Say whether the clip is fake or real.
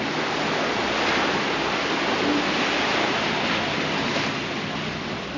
real